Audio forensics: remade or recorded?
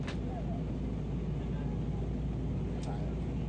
recorded